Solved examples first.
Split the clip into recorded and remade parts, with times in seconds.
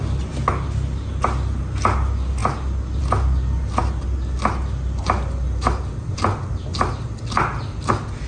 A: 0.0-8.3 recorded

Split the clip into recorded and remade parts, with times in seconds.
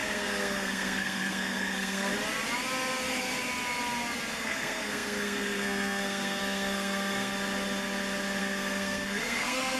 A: 0.0-2.1 remade; 2.1-4.3 recorded; 4.3-7.3 remade; 7.3-8.4 recorded; 8.4-9.8 remade